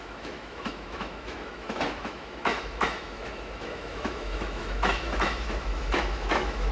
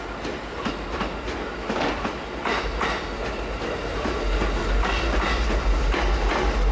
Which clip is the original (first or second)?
second